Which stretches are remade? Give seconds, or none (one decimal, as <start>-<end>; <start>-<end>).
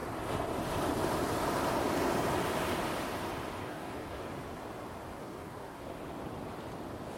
3.6-4.3; 5.2-5.8